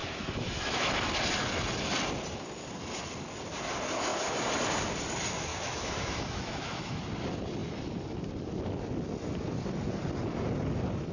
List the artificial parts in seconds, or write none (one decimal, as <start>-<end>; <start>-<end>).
0.0-1.1; 5.5-7.0